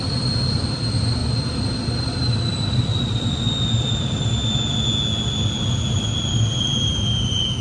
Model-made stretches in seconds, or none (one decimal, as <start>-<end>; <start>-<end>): 0.0-1.2; 5.8-7.6